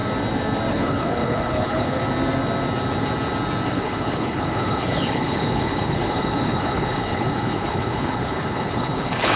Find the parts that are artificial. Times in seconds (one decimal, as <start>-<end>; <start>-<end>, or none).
0.7-2.0; 3.7-9.4